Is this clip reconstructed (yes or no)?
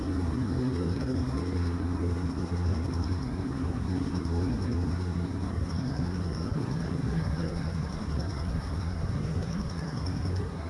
yes